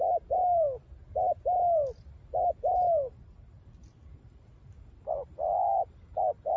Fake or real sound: real